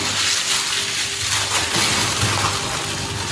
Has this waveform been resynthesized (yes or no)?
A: no